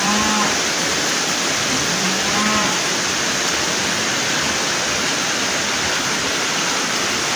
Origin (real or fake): fake